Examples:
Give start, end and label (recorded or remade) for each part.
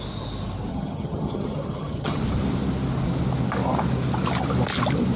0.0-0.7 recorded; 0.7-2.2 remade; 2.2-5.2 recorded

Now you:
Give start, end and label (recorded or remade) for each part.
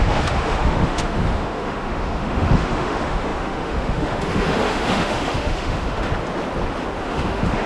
0.0-6.1 remade; 6.1-7.0 recorded; 7.0-7.7 remade